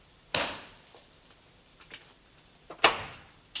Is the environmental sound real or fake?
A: real